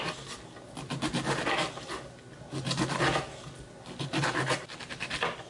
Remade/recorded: recorded